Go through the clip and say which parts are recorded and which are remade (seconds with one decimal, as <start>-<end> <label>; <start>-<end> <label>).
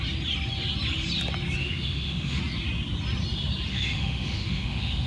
0.0-1.6 recorded; 1.6-2.4 remade; 2.4-3.7 recorded; 3.7-5.1 remade